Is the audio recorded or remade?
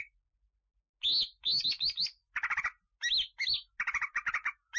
recorded